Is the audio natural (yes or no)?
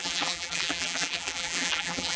no